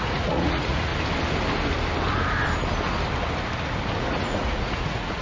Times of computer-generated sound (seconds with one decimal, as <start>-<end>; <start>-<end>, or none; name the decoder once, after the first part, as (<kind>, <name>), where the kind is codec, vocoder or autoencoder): 0.0-0.9 (vocoder, Vocos); 4.0-5.2